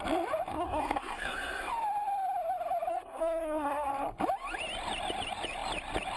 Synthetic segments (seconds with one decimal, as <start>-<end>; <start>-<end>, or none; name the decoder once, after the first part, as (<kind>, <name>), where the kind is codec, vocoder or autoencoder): 0.5-1.7 (codec, SNAC); 2.9-3.9